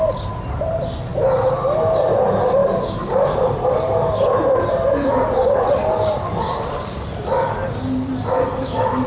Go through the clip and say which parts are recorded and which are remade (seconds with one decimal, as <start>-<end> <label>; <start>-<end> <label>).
0.0-9.1 recorded